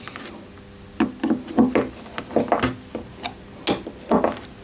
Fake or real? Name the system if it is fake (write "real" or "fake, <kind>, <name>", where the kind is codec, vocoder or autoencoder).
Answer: real